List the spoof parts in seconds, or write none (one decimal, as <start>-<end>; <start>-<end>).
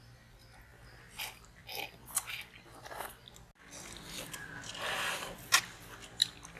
none